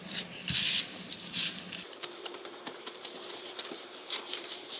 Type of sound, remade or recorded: remade